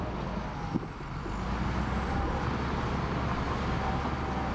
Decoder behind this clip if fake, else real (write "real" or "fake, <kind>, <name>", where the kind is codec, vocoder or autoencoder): real